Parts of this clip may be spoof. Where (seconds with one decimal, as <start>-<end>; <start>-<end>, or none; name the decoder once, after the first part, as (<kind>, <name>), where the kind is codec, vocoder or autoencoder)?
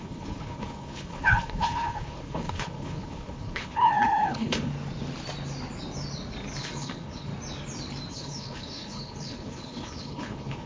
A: 0.0-4.7 (codec, HILCodec); 6.6-7.3; 8.1-10.7